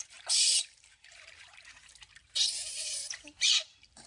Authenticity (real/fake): fake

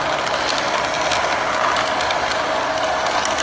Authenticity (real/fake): real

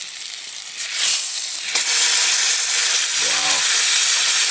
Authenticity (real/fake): real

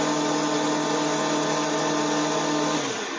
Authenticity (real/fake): real